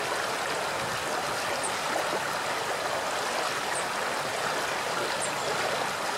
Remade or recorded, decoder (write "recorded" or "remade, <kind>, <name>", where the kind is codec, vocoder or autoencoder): recorded